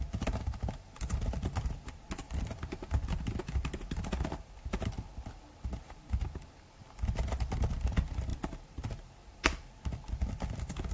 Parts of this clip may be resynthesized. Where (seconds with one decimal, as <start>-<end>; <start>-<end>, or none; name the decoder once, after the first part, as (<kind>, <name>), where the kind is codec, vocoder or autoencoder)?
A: none